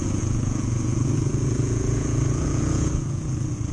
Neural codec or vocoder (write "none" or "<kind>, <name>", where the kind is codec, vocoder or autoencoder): vocoder, Vocos